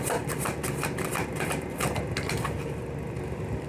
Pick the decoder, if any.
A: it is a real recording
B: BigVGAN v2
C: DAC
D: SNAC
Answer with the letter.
A